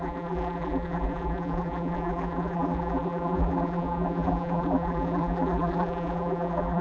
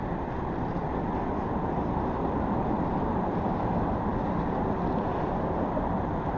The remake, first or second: first